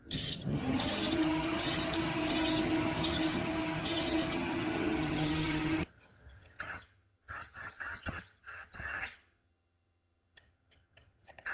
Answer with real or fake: fake